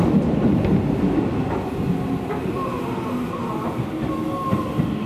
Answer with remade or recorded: recorded